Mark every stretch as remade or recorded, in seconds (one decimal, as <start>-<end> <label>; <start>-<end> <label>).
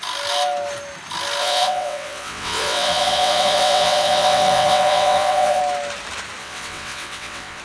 0.0-1.4 recorded; 1.4-5.6 remade; 5.6-6.4 recorded; 6.4-7.6 remade